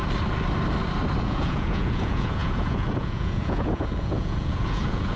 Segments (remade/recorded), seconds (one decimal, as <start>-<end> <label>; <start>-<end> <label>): 0.0-1.2 recorded; 1.2-5.2 remade